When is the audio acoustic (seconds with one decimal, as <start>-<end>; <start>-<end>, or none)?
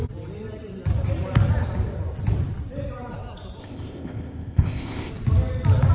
0.0-3.6; 5.1-5.9